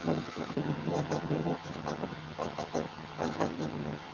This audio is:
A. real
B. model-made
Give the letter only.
B